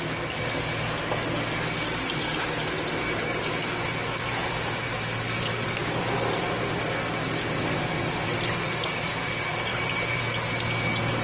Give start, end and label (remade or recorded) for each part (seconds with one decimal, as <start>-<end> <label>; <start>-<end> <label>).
0.0-4.4 recorded; 4.4-5.0 remade; 5.0-9.7 recorded; 9.7-10.2 remade; 10.2-11.2 recorded